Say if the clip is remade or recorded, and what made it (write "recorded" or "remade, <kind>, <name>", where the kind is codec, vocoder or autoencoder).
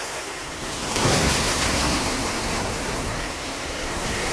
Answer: remade, codec, SNAC